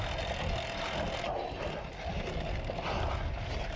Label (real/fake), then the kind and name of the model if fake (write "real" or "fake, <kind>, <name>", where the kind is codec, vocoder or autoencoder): real